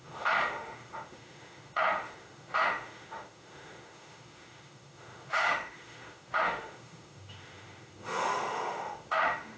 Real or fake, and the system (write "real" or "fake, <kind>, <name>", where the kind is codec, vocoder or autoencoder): fake, autoencoder, DAC-VAE